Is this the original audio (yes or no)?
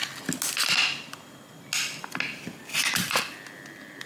yes